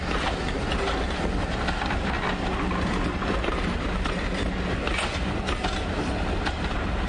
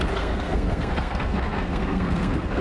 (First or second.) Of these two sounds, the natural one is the first